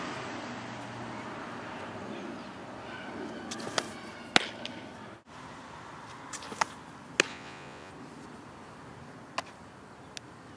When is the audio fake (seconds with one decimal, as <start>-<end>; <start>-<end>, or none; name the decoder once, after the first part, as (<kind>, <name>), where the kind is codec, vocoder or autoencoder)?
7.3-7.9 (vocoder, Vocos)